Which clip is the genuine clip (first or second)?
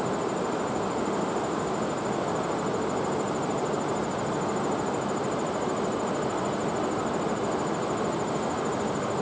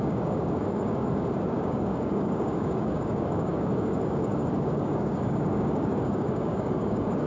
first